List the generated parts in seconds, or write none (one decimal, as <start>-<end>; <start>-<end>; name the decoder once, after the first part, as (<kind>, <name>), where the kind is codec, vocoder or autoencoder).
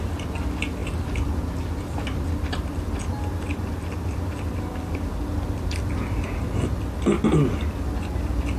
none